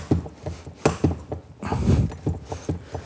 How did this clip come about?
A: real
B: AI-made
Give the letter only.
A